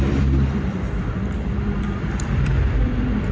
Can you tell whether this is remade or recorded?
remade